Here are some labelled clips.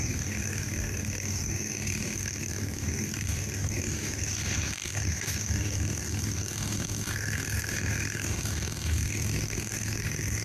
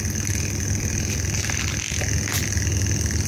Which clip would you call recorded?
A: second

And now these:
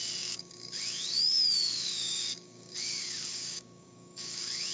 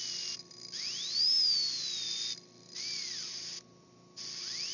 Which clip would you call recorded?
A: second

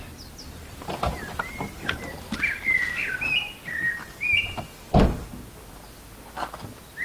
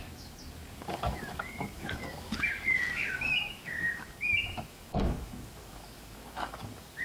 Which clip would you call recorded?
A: first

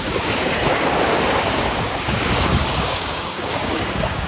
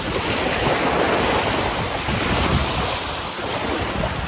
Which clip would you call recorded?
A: second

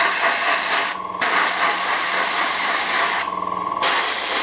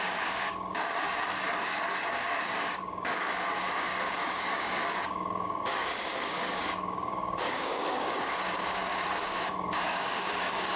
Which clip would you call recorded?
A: first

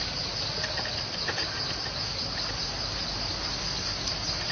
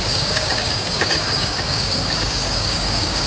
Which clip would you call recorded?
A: first